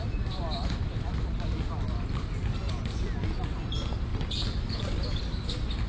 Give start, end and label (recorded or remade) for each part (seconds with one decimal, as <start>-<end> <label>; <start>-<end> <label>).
0.0-5.9 recorded